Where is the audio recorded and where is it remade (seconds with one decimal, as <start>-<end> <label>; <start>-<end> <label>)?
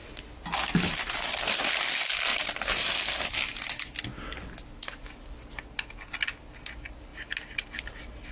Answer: 0.0-8.3 recorded